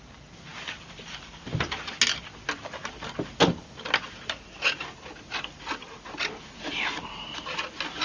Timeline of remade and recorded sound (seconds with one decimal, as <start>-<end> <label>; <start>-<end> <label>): 0.0-8.0 recorded